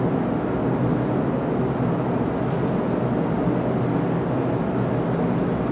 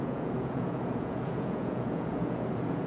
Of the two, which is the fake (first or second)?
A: second